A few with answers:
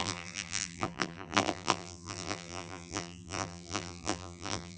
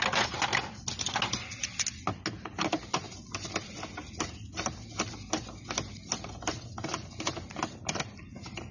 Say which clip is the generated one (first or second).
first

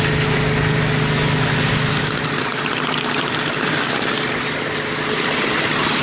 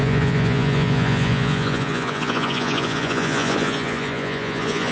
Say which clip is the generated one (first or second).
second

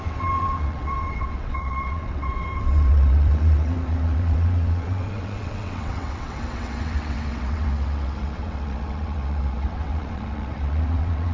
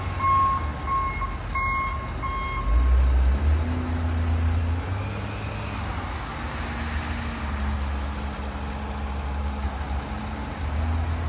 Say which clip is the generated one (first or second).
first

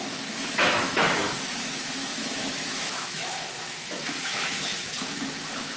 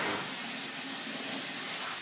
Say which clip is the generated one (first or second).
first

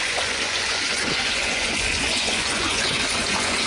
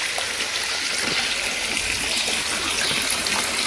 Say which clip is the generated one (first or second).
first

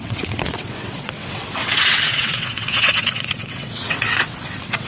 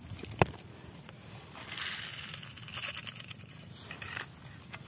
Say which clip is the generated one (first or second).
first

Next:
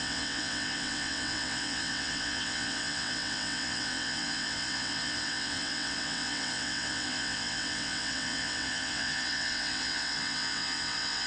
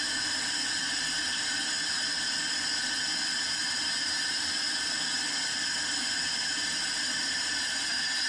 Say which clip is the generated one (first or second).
first